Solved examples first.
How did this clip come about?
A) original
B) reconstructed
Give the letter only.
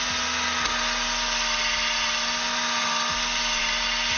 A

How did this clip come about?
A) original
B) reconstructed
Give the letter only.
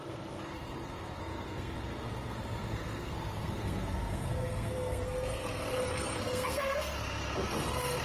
B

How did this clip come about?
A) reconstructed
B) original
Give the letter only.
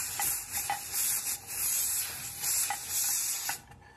B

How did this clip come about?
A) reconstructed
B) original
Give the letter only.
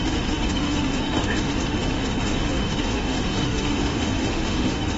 A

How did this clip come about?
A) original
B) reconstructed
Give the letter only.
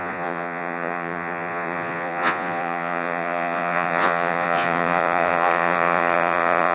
B